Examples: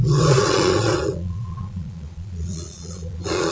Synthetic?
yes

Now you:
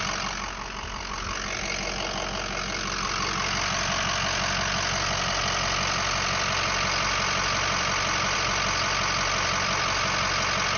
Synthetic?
no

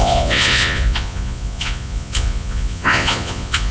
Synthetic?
yes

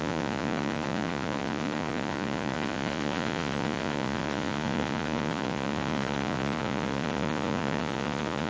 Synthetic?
yes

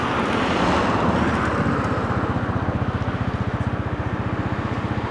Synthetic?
no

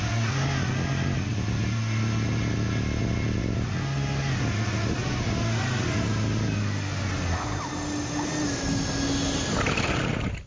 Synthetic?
no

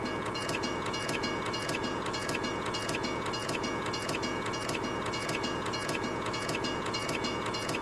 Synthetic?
yes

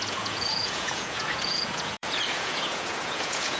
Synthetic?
yes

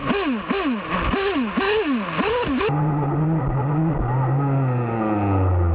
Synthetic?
no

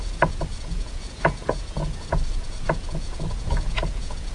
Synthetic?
yes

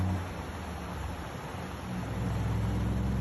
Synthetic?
no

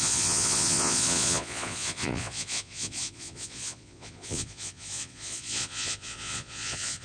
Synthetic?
yes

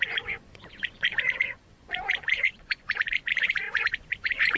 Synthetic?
yes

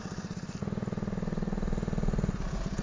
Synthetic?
no